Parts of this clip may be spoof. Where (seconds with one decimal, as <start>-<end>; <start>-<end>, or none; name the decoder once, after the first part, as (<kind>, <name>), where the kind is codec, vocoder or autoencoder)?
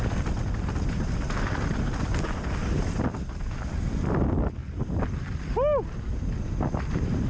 none